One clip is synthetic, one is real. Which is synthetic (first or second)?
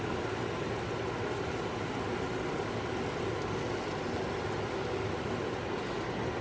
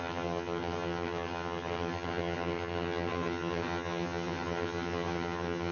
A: second